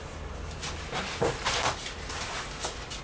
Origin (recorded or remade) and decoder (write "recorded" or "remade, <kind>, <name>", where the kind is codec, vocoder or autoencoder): recorded